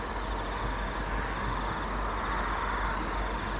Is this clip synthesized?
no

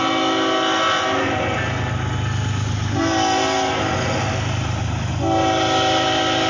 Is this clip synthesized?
no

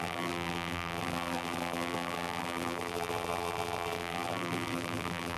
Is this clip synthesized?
yes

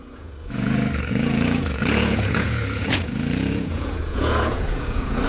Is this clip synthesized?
yes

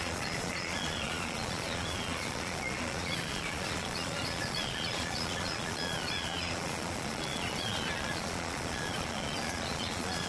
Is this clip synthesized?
yes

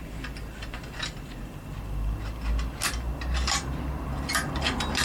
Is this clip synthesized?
no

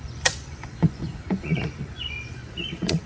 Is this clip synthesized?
yes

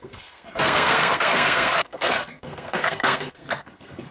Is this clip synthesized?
yes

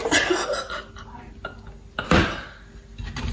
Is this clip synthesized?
no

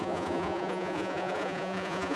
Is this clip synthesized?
yes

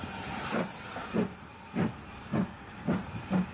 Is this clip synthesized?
no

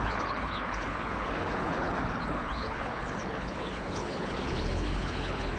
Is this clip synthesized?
yes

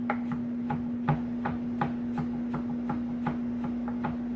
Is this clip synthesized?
no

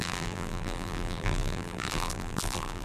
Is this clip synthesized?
yes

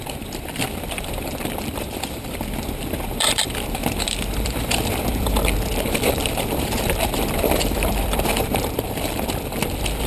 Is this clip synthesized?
yes